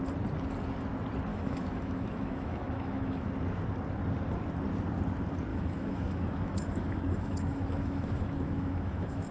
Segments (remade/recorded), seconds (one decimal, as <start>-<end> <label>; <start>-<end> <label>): 0.0-1.3 recorded; 1.3-3.3 remade; 3.3-5.5 recorded; 5.5-9.3 remade